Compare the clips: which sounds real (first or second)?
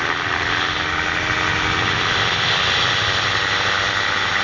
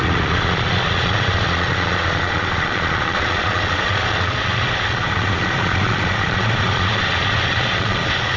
first